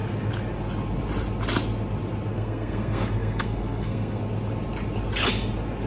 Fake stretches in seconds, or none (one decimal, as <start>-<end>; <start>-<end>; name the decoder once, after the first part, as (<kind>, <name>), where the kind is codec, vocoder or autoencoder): 2.3-4.2 (codec, SNAC)